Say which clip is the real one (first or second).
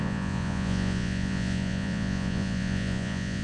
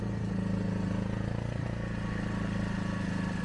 second